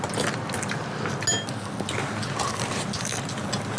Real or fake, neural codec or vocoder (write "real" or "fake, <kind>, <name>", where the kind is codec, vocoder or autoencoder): real